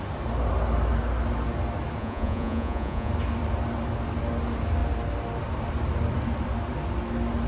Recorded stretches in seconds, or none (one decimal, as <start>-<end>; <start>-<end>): 0.0-2.0; 3.1-7.5